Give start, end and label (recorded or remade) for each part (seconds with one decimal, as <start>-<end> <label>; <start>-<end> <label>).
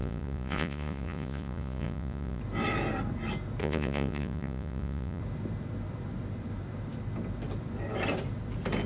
0.0-2.4 remade; 2.4-3.6 recorded; 3.6-5.2 remade; 5.2-8.9 recorded